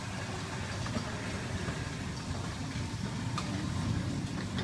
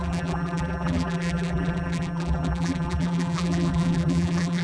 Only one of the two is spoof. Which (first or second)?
second